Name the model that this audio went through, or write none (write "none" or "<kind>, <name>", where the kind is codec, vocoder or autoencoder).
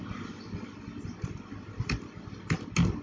none